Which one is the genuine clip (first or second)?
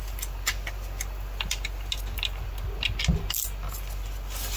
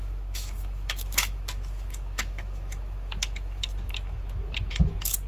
first